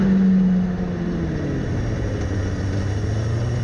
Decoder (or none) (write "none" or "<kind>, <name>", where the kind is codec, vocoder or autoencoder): none